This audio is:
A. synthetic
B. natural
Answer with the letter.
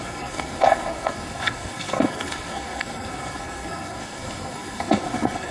A